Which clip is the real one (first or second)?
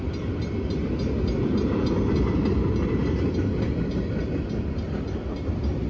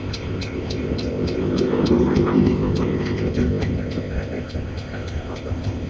first